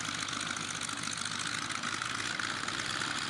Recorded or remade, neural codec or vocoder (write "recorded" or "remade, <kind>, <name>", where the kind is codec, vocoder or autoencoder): recorded